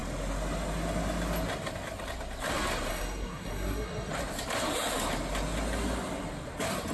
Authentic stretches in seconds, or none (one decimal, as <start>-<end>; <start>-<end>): 0.0-2.9; 4.1-6.9